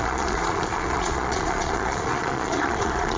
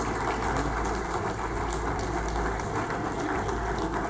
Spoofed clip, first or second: first